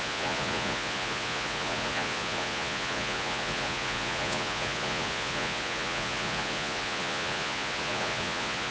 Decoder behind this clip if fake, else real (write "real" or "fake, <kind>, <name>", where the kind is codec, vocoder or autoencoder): fake, vocoder, Vocos